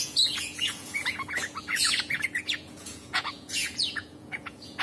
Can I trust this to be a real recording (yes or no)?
no